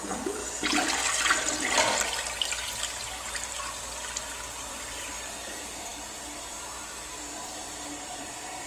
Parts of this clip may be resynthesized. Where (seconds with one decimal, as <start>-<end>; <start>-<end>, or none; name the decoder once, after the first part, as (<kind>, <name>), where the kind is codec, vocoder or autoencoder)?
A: 0.0-0.4 (vocoder, BigVGAN v2); 4.7-8.7